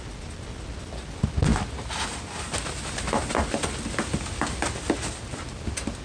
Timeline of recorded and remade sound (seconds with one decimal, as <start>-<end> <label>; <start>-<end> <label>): 0.0-6.0 recorded